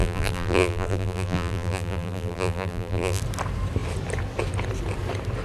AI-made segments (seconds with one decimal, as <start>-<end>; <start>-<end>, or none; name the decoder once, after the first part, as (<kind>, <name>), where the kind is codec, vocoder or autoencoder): 0.0-3.2 (vocoder, BigVGAN v2)